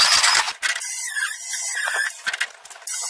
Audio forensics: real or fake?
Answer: real